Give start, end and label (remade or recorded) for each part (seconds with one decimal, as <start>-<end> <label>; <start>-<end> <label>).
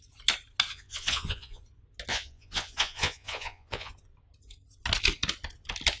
0.0-0.7 recorded; 0.7-1.6 remade; 1.6-2.1 recorded; 2.1-3.9 remade; 3.9-6.0 recorded